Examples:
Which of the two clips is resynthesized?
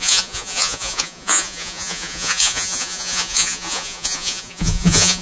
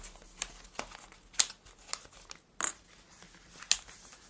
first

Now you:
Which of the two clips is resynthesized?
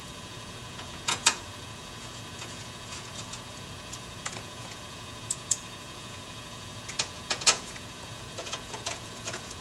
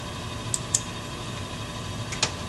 first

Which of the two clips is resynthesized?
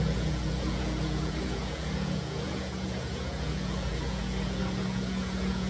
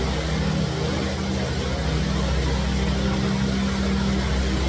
first